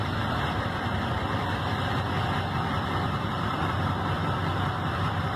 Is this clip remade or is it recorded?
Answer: remade